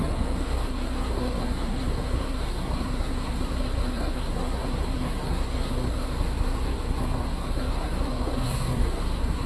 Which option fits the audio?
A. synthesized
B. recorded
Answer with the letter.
A